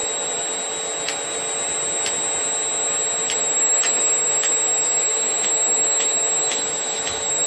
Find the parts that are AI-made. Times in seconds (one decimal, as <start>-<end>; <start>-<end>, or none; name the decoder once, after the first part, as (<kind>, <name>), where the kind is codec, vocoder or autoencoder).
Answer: 3.4-7.5 (autoencoder, DAC-VAE)